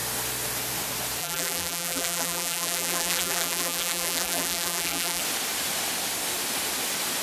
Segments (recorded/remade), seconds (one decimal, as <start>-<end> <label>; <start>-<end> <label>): 0.0-1.2 recorded; 1.2-5.2 remade; 5.2-7.2 recorded